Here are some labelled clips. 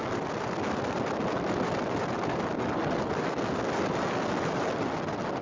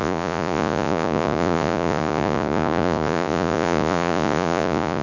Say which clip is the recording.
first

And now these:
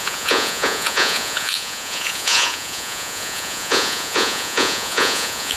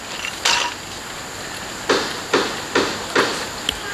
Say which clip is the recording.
second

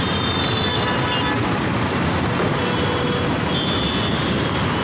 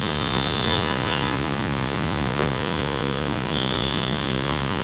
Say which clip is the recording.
first